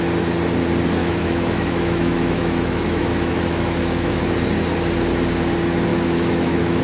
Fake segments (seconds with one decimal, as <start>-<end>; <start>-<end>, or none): 1.0-4.2; 5.9-6.8